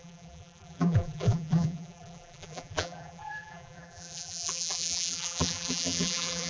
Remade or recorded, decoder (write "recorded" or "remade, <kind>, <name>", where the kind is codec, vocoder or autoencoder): remade, vocoder, BigVGAN v2